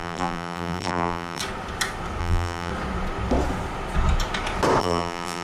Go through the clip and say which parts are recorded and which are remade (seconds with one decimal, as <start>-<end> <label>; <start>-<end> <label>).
0.0-1.4 remade; 1.4-2.2 recorded; 2.2-2.7 remade; 2.7-4.8 recorded; 4.8-5.4 remade